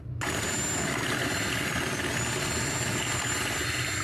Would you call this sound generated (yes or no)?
no